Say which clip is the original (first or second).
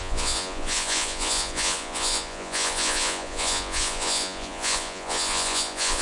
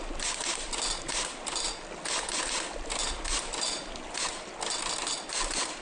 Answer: second